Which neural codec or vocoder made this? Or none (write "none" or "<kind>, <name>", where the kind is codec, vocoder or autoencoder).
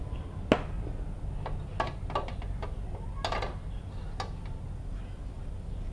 none